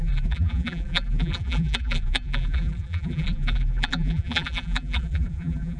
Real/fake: fake